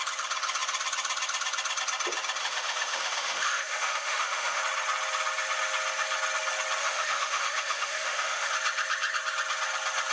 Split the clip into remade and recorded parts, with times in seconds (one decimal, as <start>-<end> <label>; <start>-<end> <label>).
0.0-2.4 recorded; 2.4-4.6 remade; 4.6-6.8 recorded; 6.8-8.5 remade; 8.5-10.1 recorded